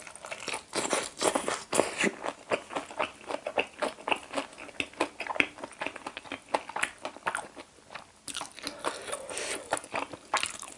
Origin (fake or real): real